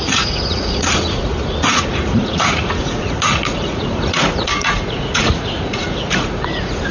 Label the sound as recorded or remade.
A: remade